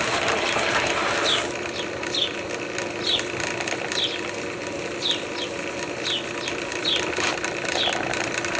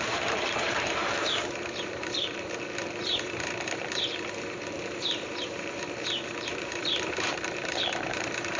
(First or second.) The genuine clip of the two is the first